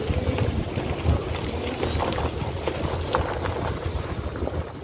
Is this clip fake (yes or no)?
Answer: no